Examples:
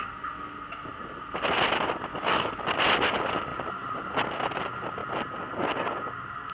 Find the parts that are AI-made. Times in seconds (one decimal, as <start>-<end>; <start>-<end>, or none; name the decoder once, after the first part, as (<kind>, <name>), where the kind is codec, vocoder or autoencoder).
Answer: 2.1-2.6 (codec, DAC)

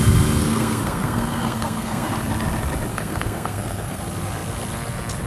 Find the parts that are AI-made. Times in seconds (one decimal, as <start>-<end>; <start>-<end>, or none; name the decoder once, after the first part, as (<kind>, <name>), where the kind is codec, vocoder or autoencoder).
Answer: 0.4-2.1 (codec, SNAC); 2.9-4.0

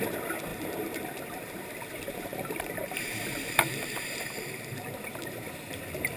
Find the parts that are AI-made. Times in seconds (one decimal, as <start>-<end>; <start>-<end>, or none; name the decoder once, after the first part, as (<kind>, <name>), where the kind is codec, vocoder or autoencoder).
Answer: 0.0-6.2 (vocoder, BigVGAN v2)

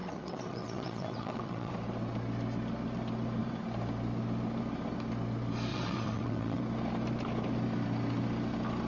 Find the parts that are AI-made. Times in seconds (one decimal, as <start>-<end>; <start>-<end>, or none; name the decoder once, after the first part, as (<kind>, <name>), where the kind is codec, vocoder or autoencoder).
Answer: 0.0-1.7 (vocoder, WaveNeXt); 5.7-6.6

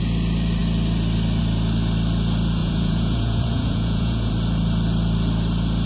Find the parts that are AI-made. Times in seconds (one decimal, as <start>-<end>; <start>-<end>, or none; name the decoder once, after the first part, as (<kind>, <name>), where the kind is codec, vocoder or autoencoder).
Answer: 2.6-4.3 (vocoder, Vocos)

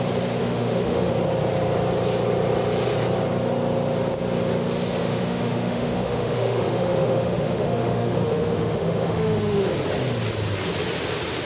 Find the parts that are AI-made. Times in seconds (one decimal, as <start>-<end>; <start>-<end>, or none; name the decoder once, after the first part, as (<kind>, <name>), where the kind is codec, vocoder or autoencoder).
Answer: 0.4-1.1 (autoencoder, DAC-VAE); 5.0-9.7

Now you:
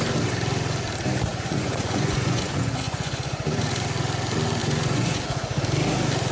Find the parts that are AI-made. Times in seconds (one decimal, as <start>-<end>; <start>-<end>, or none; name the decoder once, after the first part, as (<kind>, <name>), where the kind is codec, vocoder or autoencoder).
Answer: 1.3-3.8 (vocoder, Vocos); 4.6-5.2